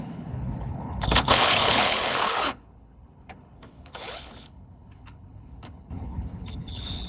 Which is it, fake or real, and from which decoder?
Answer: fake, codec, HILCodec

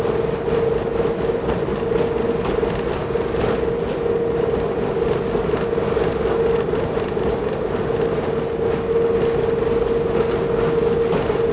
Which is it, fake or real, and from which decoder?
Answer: real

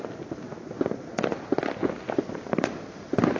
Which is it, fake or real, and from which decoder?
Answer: real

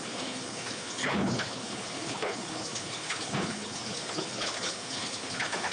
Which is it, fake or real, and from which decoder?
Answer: fake, codec, HILCodec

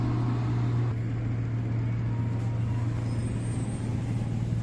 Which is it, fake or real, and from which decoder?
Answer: real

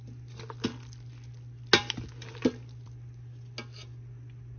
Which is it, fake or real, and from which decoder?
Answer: real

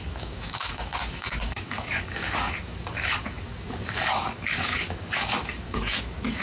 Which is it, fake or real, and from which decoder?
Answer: fake, codec, DAC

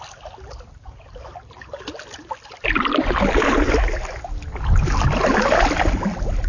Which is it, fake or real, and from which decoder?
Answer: real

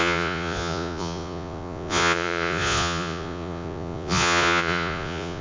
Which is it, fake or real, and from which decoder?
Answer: fake, vocoder, Vocos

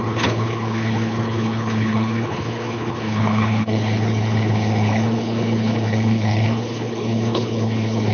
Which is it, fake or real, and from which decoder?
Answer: fake, codec, HILCodec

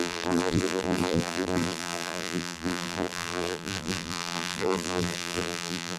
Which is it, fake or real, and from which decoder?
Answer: fake, vocoder, BigVGAN v2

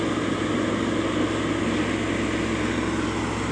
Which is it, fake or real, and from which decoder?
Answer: real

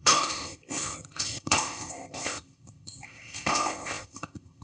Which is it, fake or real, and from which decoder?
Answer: fake, codec, ZipCodec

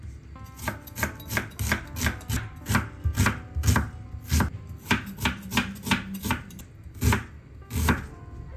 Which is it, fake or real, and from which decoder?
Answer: real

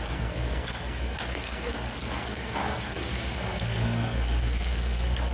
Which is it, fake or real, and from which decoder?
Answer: fake, codec, SNAC